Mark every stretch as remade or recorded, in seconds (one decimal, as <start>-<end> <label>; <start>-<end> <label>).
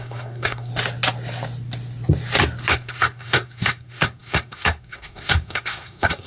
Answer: 0.0-0.7 remade; 0.7-2.7 recorded; 2.7-6.3 remade